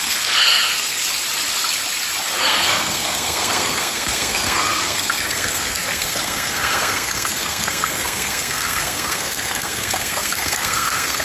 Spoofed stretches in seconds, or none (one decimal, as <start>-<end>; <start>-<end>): 0.0-1.0; 2.4-11.2